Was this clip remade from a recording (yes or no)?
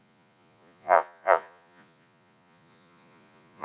yes